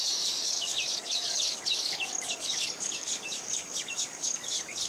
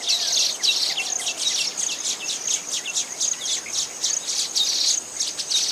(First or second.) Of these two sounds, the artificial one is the first